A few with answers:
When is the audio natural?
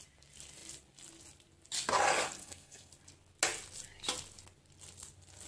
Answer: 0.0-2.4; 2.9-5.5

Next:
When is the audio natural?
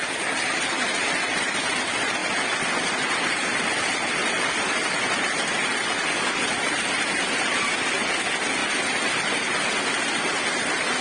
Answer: 0.0-11.0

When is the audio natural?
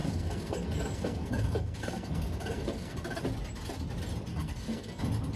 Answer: 3.2-4.3; 5.0-5.4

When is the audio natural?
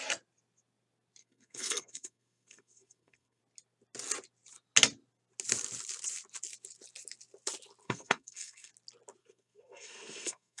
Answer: 0.0-1.2; 3.4-7.8; 8.7-9.2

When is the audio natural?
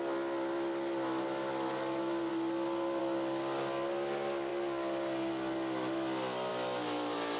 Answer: 0.0-7.4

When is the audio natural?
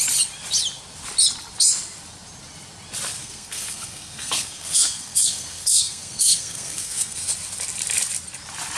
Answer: 0.0-3.2; 7.3-8.8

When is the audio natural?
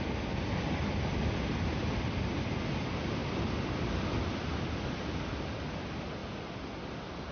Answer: 0.0-7.3